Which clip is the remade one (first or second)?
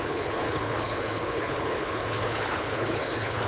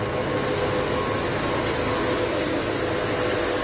first